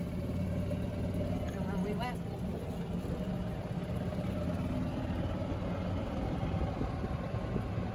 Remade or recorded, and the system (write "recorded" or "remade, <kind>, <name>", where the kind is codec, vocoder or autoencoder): recorded